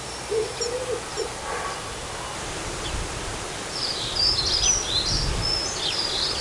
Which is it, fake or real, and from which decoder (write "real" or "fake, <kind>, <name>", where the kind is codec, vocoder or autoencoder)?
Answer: real